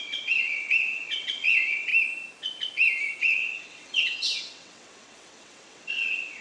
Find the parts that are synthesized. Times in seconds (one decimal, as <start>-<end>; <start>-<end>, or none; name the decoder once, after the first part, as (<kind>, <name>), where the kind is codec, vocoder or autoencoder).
0.0-1.9 (vocoder, WaveNeXt); 3.2-6.4